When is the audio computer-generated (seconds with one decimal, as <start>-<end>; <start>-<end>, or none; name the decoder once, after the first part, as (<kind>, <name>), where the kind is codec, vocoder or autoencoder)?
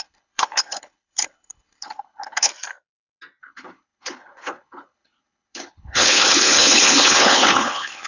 0.0-2.5 (codec, HILCodec); 3.4-8.1